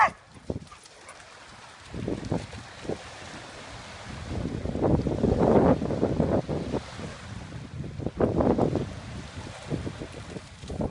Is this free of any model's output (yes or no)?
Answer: yes